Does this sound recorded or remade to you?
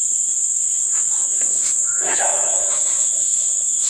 remade